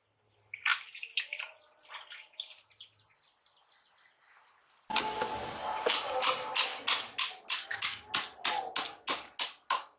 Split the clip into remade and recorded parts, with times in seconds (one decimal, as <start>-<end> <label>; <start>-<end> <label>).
0.0-10.0 recorded